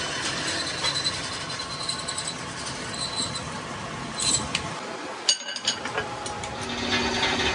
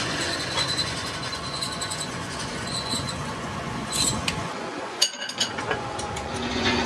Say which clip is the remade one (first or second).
second